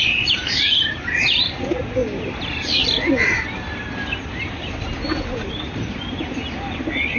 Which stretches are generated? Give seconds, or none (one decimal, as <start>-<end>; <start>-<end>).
none